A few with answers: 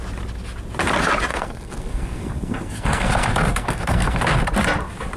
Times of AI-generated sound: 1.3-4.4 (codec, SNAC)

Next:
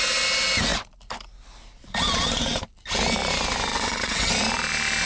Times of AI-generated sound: 3.7-4.3 (vocoder, WaveNeXt)

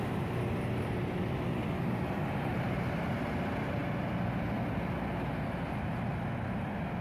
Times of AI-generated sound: 2.5-3.1 (vocoder, BigVGAN v2)